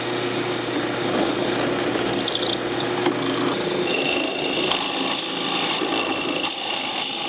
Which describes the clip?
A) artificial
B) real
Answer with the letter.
B